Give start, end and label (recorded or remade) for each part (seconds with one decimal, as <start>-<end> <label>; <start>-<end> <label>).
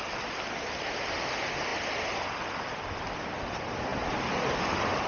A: 0.0-5.1 recorded